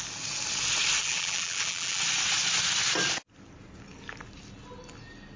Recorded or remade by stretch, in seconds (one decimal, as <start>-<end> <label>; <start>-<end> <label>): 0.0-1.0 recorded; 1.0-2.0 remade; 2.0-5.4 recorded